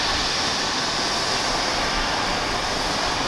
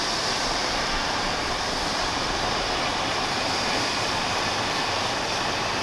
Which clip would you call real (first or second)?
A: first